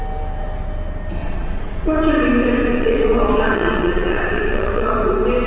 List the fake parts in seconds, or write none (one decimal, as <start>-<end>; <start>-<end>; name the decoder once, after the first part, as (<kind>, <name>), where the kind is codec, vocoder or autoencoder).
1.2-2.1 (vocoder, WaveNeXt); 2.7-4.9